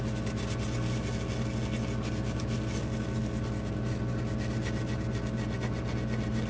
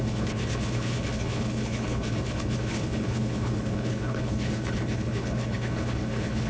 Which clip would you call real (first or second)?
first